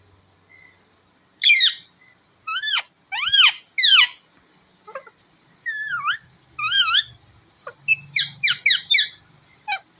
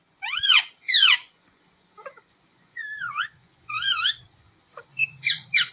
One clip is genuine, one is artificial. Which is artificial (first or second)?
second